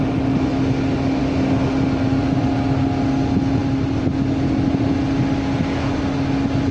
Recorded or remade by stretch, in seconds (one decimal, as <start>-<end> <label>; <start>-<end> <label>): 0.0-3.6 recorded; 3.6-4.2 remade; 4.2-6.7 recorded